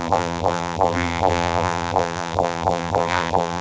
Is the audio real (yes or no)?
no